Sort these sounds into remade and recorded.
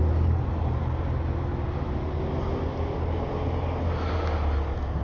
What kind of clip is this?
recorded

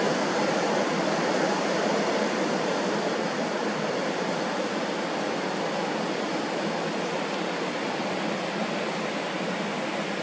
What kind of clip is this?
recorded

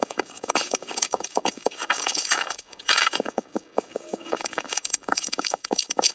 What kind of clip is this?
remade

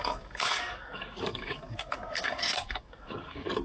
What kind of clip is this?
remade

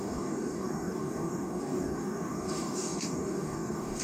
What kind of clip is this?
remade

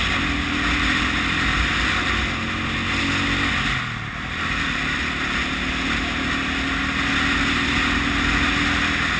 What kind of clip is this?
recorded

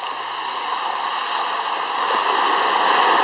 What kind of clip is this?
recorded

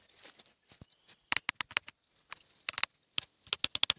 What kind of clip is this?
recorded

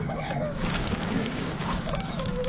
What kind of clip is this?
remade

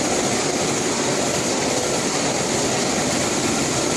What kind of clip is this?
recorded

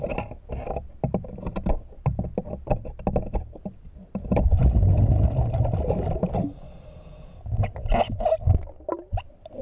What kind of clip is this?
recorded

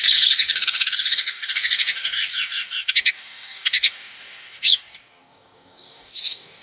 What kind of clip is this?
remade